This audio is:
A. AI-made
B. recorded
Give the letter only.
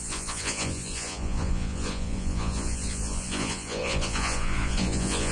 A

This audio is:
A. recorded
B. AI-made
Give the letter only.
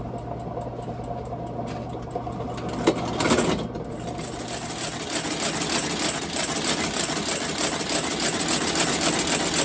A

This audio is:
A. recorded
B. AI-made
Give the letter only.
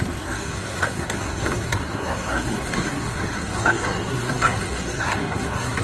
B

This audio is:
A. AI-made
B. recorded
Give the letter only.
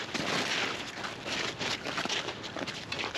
B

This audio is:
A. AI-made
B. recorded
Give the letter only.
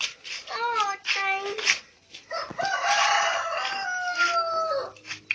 B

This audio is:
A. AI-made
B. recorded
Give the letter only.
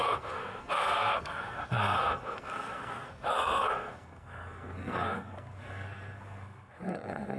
A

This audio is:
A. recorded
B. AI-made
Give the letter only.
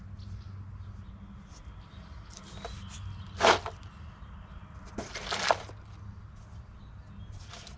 A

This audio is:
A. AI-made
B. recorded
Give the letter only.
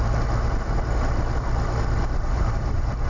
A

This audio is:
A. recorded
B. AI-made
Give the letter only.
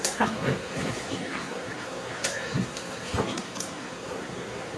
B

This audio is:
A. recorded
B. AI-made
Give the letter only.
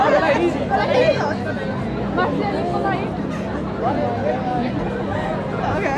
A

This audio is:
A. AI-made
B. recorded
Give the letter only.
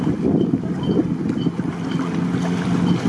B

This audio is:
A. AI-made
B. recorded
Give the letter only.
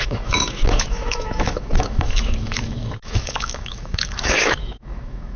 A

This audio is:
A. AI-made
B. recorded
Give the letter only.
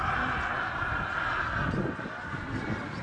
B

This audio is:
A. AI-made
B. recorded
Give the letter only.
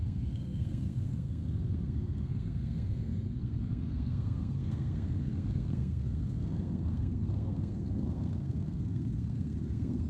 A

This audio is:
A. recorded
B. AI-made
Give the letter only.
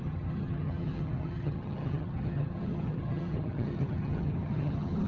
B